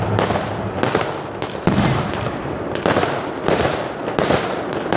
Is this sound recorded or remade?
recorded